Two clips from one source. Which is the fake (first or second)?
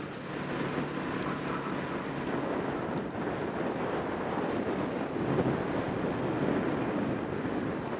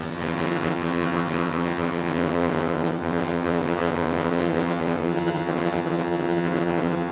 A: second